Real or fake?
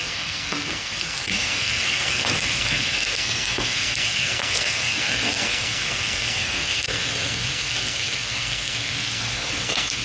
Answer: fake